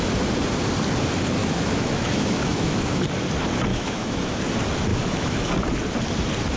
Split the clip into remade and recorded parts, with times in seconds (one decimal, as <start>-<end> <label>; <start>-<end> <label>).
0.0-1.4 recorded; 1.4-3.0 remade; 3.0-3.7 recorded; 3.7-4.4 remade; 4.4-4.9 recorded; 4.9-5.5 remade; 5.5-6.6 recorded

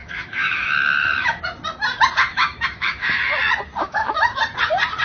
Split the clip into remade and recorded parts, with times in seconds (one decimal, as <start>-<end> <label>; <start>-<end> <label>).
0.0-1.4 remade; 1.4-2.3 recorded; 2.3-3.2 remade; 3.2-3.8 recorded; 3.8-4.4 remade; 4.4-5.0 recorded

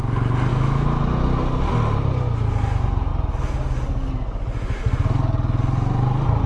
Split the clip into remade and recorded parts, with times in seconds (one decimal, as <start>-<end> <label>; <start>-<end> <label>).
0.0-0.5 recorded; 0.5-1.0 remade; 1.0-6.5 recorded

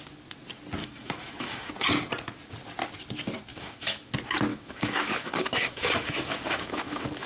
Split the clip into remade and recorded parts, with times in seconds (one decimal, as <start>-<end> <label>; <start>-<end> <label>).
0.0-0.8 recorded; 0.8-1.7 remade; 1.7-3.5 recorded; 3.5-4.1 remade; 4.1-4.5 recorded; 4.5-7.3 remade